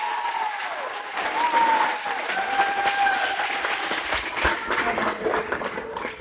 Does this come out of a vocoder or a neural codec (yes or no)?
no